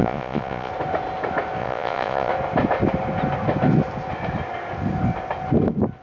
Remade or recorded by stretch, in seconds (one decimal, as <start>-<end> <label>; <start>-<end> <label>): 0.0-0.7 remade; 0.7-1.6 recorded; 1.6-2.3 remade; 2.3-6.0 recorded